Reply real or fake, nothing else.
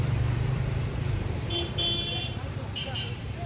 fake